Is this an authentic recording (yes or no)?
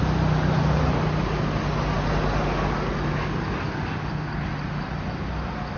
yes